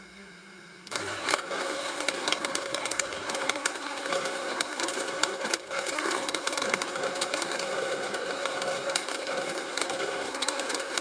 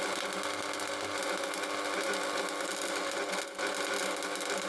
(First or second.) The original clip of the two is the second